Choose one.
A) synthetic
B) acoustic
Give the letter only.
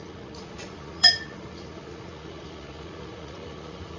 A